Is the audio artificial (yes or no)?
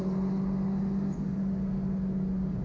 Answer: no